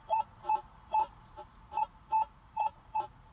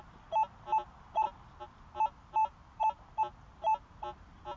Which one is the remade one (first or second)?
first